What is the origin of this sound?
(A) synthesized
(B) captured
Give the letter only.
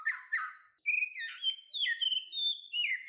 B